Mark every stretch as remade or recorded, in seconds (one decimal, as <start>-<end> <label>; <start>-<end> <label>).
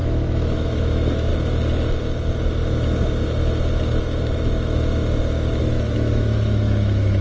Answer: 0.0-1.3 remade; 1.3-5.6 recorded; 5.6-7.2 remade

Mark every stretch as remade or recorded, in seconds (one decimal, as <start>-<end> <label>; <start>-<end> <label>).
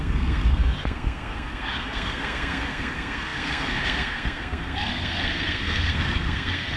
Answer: 0.0-6.8 remade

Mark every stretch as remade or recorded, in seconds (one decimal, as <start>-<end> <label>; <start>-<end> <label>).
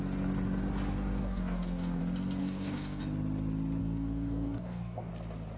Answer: 0.0-1.2 recorded; 1.2-2.0 remade; 2.0-2.4 recorded; 2.4-3.0 remade; 3.0-3.8 recorded; 3.8-5.1 remade; 5.1-5.6 recorded